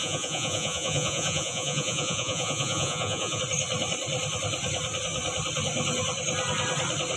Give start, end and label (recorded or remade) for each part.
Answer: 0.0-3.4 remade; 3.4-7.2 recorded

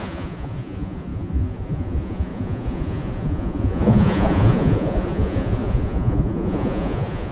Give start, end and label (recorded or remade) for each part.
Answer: 0.0-7.3 remade

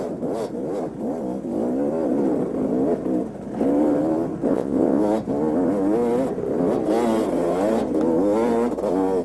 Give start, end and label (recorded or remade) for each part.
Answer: 0.0-4.5 recorded; 4.5-5.0 remade; 5.0-9.2 recorded

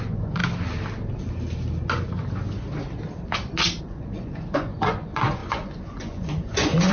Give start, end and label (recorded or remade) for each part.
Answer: 0.0-0.4 remade; 0.4-3.8 recorded; 3.8-6.9 remade

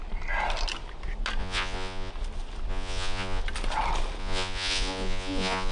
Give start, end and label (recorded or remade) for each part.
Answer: 0.0-1.4 recorded; 1.4-2.1 remade; 2.1-2.7 recorded; 2.7-3.4 remade; 3.4-4.2 recorded; 4.2-5.7 remade

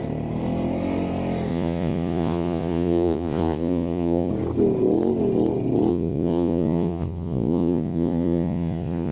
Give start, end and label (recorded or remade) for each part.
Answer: 0.0-1.5 recorded; 1.5-4.3 remade; 4.3-5.9 recorded; 5.9-9.1 remade